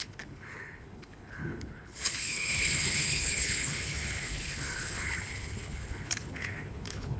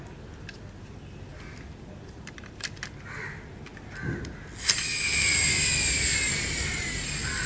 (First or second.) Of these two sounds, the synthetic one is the first